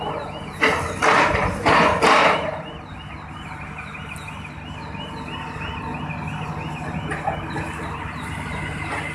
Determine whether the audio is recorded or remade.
recorded